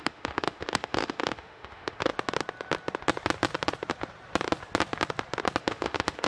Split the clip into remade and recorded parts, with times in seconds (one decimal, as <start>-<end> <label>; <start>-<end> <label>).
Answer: 0.0-2.1 remade; 2.1-5.6 recorded; 5.6-6.3 remade